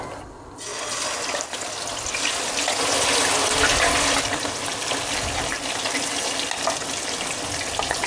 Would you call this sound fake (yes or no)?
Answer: no